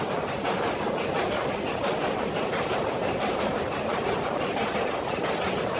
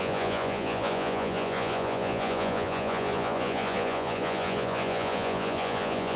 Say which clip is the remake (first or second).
second